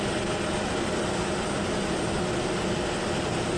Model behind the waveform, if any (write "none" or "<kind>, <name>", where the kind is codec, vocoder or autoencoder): none